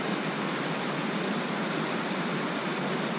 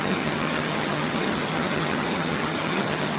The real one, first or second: first